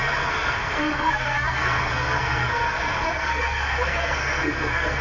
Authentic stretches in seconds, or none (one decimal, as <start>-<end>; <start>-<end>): none